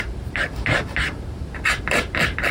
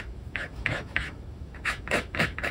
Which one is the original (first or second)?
first